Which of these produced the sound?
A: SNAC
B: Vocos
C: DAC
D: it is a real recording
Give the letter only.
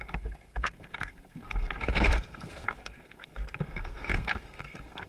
A